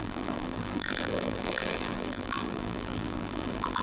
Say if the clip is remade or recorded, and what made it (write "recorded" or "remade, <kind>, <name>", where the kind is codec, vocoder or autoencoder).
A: remade, vocoder, BigVGAN v2